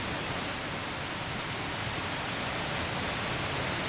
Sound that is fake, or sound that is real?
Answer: real